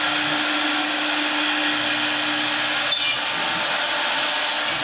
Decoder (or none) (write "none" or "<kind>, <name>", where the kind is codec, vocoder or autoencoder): none